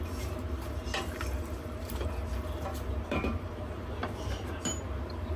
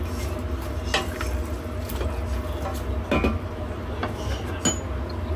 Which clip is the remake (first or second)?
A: first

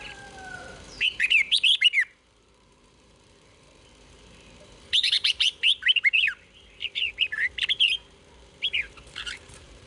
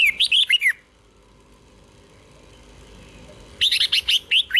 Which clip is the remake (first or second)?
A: first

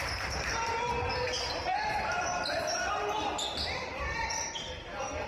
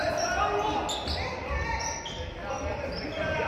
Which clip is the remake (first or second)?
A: first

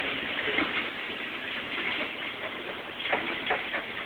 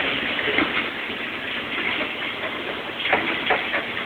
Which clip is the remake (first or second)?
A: first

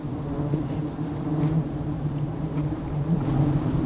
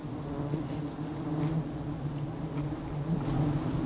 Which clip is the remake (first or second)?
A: first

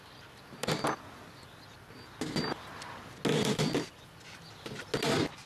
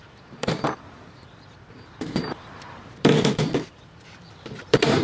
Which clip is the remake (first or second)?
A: second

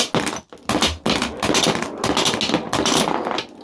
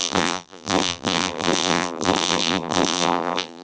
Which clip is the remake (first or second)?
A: second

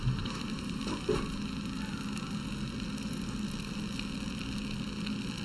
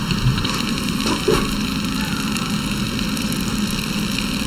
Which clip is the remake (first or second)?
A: second